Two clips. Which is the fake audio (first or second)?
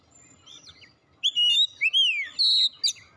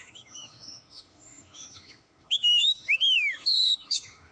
second